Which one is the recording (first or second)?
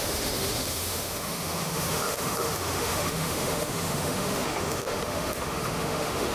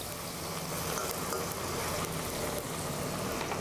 second